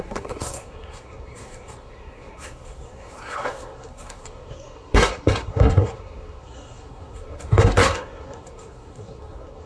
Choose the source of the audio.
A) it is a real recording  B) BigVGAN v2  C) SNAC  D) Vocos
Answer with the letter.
C